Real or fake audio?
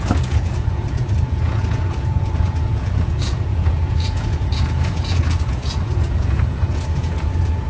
fake